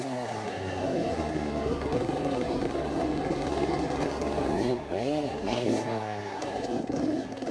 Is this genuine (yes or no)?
no